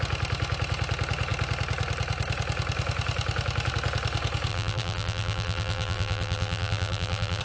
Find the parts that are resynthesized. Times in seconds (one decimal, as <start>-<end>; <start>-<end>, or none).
4.5-7.4